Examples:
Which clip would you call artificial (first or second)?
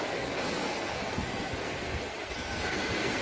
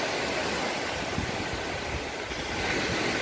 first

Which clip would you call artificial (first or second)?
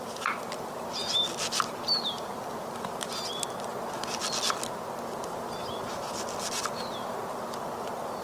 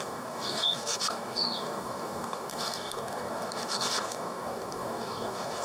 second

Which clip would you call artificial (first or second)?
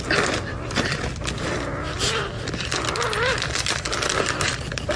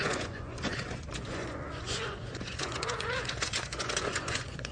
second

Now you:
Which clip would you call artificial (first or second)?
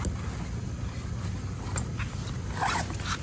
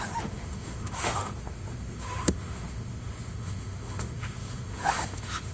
second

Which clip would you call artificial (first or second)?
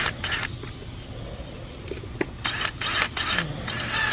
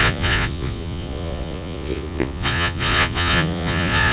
second